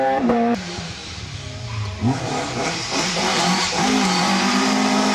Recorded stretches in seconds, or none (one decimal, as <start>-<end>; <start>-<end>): 1.0-3.0